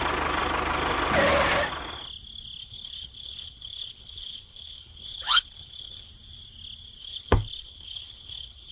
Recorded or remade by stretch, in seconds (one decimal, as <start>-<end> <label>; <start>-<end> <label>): 0.0-2.6 recorded; 2.6-6.1 remade; 6.1-7.0 recorded; 7.0-8.7 remade